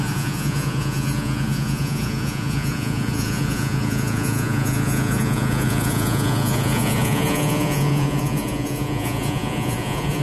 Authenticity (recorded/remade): remade